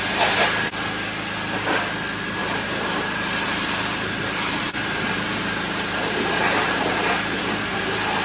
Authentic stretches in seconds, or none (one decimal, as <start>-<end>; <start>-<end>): 0.0-2.4; 6.9-8.2